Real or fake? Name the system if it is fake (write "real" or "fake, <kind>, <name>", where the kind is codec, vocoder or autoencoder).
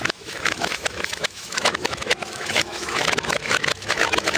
fake, autoencoder, DAC-VAE